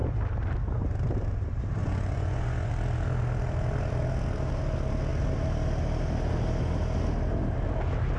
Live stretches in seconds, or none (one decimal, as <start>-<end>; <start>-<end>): 0.0-1.8; 2.7-8.2